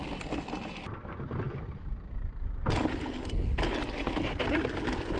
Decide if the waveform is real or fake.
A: real